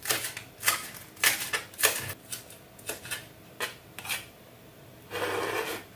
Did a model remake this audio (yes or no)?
no